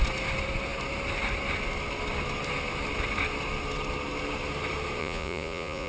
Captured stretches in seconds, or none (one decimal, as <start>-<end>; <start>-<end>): 0.0-5.0